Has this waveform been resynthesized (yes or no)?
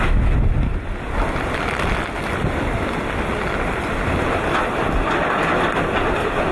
no